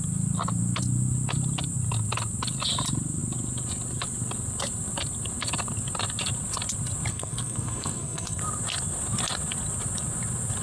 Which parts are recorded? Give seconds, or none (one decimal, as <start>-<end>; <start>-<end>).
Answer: 0.0-7.1; 8.4-10.6